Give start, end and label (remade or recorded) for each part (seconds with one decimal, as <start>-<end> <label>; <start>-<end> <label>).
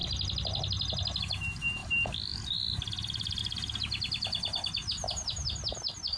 0.0-6.2 recorded